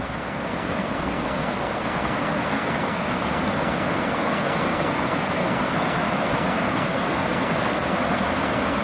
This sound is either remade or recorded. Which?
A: remade